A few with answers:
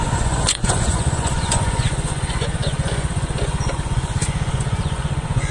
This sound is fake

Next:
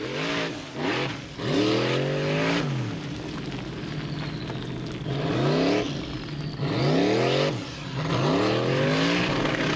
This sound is real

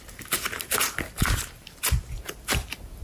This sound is real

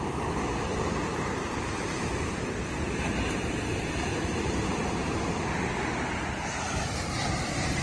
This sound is fake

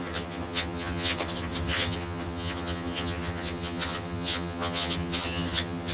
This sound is fake